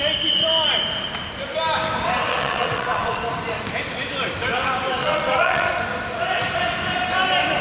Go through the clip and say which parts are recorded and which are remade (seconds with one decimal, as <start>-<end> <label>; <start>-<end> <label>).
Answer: 0.0-2.3 recorded; 2.3-3.2 remade; 3.2-5.0 recorded; 5.0-5.7 remade; 5.7-7.6 recorded